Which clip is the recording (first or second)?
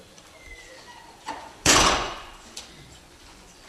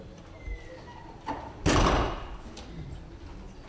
second